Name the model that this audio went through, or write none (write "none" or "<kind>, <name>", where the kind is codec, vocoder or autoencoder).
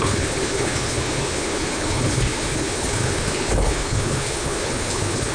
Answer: codec, HILCodec